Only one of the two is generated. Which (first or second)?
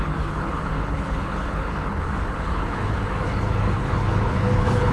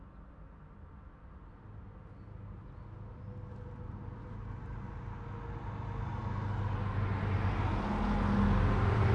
first